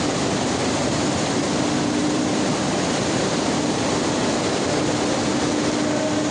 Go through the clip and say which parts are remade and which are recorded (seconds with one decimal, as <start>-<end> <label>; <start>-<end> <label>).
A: 0.0-0.6 recorded; 0.6-4.4 remade; 4.4-6.3 recorded